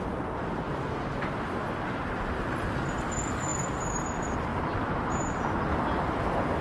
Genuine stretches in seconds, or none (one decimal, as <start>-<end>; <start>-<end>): 0.0-6.6